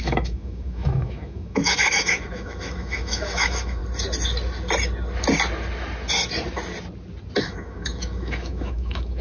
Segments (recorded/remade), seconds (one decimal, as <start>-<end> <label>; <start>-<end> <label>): 0.0-3.8 remade; 3.8-7.4 recorded; 7.4-9.2 remade